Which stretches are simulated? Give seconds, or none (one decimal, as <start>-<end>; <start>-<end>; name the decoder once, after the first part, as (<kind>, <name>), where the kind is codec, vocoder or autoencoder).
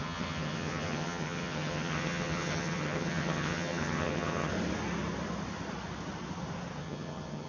0.0-4.5 (vocoder, HiFi-GAN); 6.8-7.5